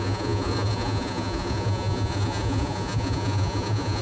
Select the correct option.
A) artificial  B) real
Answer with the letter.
A